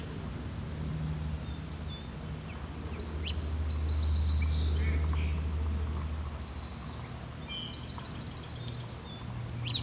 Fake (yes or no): no